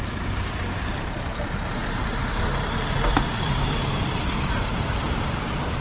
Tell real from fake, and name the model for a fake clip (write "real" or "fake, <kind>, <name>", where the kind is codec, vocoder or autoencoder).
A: fake, vocoder, BigVGAN v2